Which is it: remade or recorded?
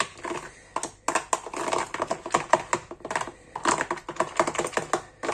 recorded